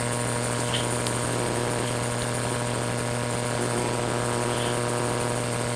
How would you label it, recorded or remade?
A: recorded